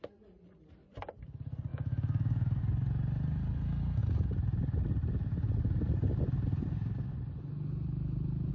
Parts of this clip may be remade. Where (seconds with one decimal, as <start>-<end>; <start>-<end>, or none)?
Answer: 1.7-2.6

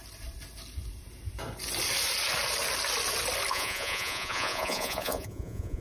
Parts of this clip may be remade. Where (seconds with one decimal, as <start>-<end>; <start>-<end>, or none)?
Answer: 3.5-5.8